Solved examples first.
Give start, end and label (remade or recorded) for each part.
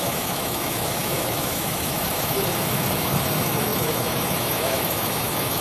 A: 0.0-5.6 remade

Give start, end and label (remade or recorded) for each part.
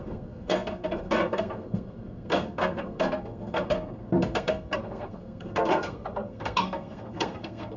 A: 0.0-7.8 remade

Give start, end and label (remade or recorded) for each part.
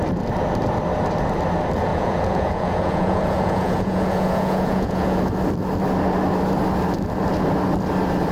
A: 0.0-1.9 recorded; 1.9-5.2 remade; 5.2-8.3 recorded